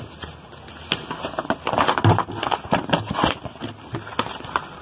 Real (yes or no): yes